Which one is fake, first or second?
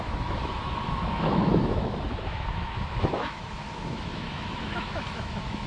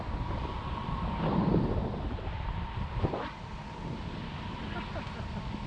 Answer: first